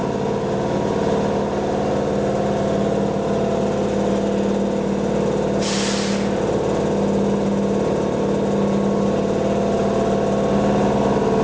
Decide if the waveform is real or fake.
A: real